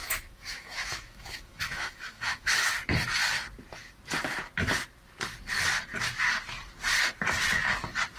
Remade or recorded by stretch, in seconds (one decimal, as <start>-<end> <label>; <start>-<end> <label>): 0.0-2.7 remade; 2.7-8.2 recorded